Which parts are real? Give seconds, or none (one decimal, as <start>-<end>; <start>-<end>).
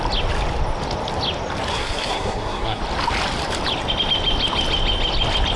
0.0-1.7; 2.8-5.6